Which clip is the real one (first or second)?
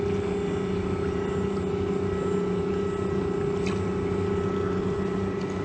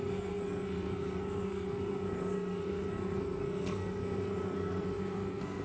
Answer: first